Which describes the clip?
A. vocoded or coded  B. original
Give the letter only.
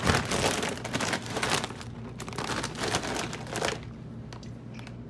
B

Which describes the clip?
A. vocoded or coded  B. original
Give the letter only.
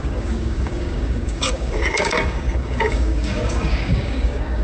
A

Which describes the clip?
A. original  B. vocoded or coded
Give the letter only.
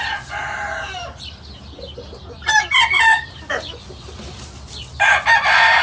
A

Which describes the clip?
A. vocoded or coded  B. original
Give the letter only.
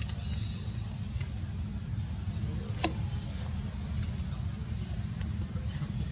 B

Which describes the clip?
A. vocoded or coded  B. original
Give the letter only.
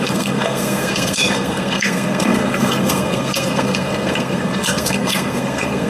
A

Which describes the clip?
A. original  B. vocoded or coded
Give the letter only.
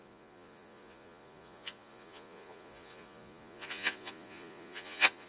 B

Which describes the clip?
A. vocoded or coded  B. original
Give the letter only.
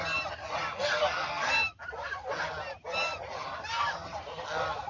B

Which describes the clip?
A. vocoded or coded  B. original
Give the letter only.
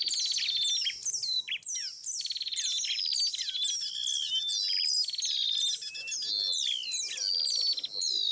B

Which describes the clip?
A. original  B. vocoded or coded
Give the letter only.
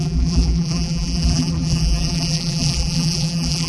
B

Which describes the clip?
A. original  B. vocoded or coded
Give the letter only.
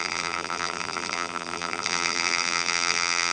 B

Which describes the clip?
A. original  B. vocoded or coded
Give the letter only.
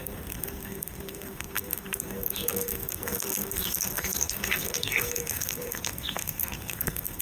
B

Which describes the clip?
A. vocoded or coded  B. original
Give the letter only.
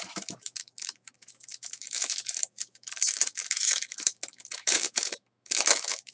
A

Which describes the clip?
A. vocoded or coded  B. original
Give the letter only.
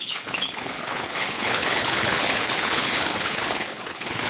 A